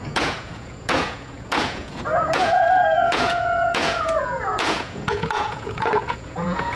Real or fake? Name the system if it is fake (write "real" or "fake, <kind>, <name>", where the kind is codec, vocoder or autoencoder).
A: fake, vocoder, Vocos